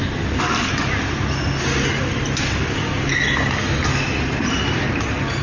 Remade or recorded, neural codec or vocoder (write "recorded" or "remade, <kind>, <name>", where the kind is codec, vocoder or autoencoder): recorded